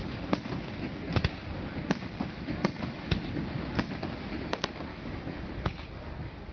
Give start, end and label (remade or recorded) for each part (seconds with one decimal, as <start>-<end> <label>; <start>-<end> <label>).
0.0-4.9 recorded; 4.9-5.5 remade; 5.5-6.5 recorded